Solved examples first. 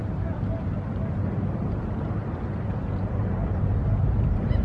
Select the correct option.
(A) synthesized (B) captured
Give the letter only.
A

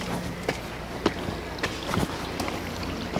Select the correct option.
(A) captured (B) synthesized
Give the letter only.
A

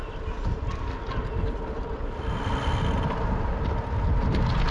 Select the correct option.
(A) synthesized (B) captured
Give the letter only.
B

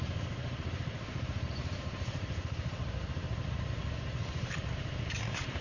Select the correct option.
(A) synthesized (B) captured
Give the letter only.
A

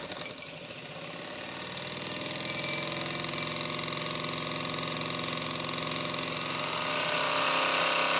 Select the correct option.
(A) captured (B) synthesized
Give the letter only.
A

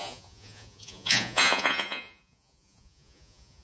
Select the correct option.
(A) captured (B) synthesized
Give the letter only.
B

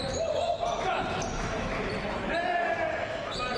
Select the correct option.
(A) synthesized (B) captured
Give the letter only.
B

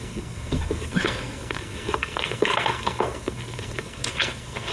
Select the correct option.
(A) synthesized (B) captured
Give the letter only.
A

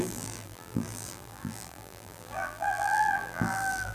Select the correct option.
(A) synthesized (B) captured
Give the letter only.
A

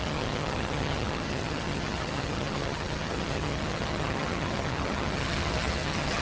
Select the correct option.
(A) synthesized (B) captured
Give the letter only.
A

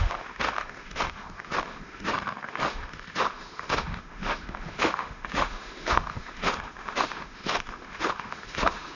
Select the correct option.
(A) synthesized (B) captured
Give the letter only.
A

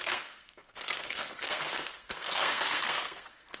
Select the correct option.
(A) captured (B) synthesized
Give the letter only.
B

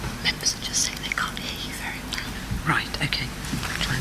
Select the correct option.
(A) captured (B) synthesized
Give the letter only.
A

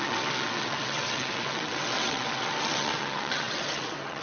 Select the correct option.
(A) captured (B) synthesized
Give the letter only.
B